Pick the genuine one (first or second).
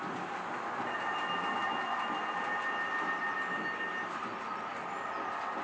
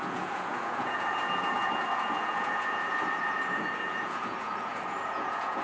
first